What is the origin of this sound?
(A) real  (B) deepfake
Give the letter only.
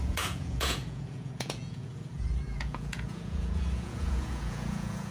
B